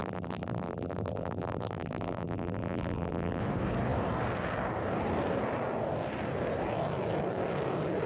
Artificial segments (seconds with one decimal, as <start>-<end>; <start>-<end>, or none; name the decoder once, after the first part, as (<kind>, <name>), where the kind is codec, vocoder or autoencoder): 0.0-3.4 (vocoder, BigVGAN v2)